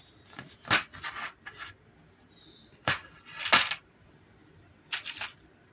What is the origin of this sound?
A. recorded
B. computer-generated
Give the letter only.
A